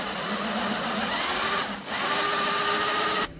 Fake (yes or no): no